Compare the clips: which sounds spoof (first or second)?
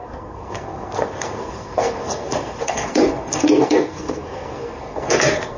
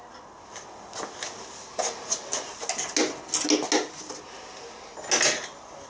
first